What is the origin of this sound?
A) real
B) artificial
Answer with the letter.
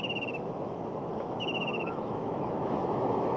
B